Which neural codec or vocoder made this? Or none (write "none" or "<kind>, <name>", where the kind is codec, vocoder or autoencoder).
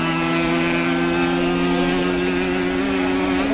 none